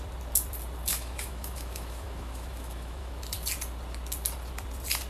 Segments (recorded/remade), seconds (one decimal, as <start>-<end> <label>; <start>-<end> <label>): 0.0-0.9 recorded; 0.9-3.2 remade; 3.2-5.1 recorded